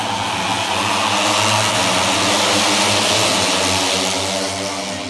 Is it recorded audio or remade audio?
recorded